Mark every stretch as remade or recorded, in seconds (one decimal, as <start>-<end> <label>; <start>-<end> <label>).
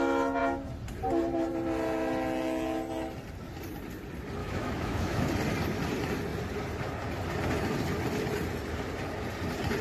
0.0-4.4 recorded; 4.4-5.3 remade; 5.3-9.8 recorded